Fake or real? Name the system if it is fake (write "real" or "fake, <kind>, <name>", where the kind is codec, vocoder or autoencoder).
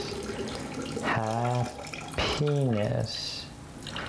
real